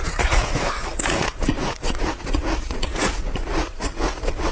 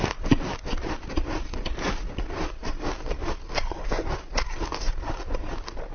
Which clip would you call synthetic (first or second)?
first